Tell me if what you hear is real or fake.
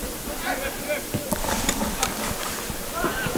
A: fake